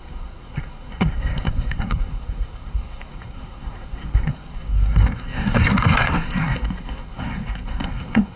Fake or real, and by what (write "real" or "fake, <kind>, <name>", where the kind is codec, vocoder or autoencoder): fake, codec, SNAC